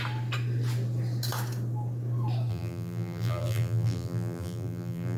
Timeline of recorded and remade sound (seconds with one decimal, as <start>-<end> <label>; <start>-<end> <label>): 0.0-2.5 recorded; 2.5-5.2 remade